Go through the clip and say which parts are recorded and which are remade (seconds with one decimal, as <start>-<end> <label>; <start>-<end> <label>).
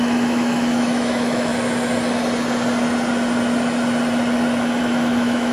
0.0-1.5 remade; 1.5-4.8 recorded; 4.8-5.5 remade